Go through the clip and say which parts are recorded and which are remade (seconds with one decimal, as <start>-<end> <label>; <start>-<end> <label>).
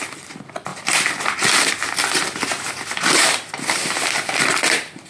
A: 0.0-5.1 recorded